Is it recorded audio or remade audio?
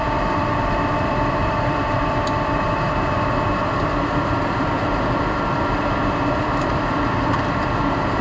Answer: remade